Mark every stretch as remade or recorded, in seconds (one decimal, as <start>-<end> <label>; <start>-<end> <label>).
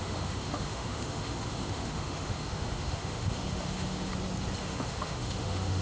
0.0-4.1 remade; 4.1-4.6 recorded; 4.6-5.8 remade